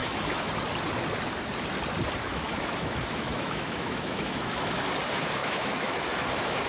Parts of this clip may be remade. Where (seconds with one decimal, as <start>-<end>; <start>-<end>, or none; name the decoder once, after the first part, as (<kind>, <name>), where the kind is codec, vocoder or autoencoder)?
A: 0.0-0.5 (autoencoder, DAC-VAE); 2.3-4.8; 5.4-6.7